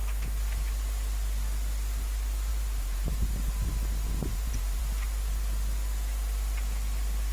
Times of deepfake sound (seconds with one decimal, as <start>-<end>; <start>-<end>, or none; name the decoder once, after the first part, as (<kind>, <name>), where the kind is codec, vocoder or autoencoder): 2.5-3.3 (vocoder, BigVGAN v2); 4.3-4.8